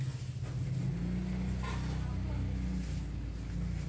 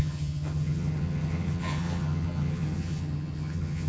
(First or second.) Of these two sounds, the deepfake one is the second